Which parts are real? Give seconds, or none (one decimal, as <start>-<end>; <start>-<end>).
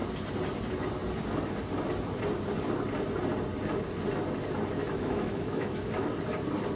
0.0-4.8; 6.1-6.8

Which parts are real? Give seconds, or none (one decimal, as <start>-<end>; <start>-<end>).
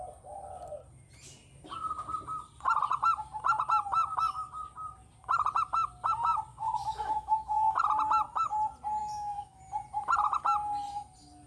0.0-6.5; 7.8-9.0; 9.6-11.5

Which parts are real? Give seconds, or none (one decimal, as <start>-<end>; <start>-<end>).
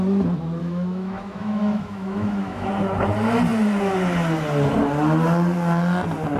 0.0-0.6; 2.7-6.4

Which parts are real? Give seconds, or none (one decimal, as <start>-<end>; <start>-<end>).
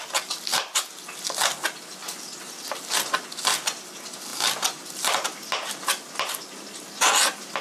0.0-7.6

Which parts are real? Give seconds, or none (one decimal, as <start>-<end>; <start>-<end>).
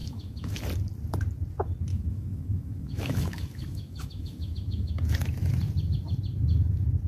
0.6-1.9; 4.9-7.1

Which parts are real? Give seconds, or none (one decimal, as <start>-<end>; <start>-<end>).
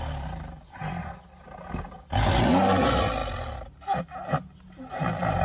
0.0-5.4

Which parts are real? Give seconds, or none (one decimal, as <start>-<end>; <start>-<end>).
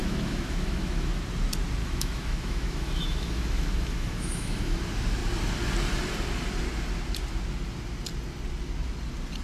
1.2-1.8; 4.8-9.4